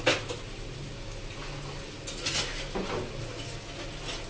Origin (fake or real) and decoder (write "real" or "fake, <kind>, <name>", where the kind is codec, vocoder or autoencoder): real